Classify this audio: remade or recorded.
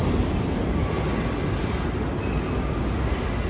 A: recorded